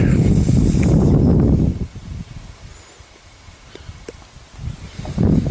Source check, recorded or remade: recorded